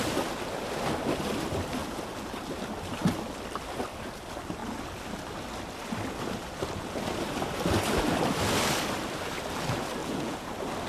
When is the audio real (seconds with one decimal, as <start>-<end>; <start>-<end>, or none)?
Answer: 0.0-1.8; 2.3-10.0; 10.5-10.9